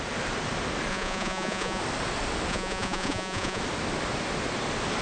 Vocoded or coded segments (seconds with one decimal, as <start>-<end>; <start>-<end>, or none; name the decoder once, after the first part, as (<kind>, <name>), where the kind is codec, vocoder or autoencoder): 0.9-1.8 (vocoder, Vocos); 2.5-3.6